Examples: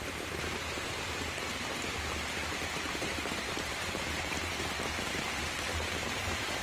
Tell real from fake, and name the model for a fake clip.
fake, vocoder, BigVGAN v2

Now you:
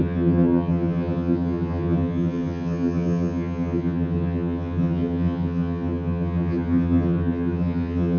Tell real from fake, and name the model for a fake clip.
fake, vocoder, HiFi-GAN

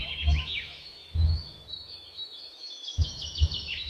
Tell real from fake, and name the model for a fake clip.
fake, autoencoder, DAC-VAE